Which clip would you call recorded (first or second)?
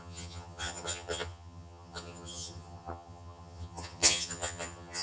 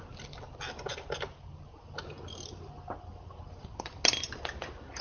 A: second